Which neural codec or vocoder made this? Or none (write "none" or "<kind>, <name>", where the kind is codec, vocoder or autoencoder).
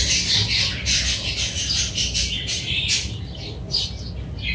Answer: none